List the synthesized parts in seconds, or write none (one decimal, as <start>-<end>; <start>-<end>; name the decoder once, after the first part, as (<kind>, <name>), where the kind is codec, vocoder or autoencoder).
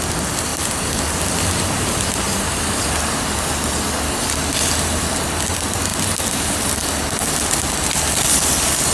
0.5-3.6 (vocoder, BigVGAN v2); 5.9-6.7